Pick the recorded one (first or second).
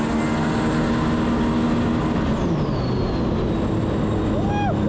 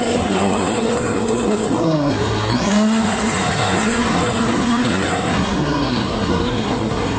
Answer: first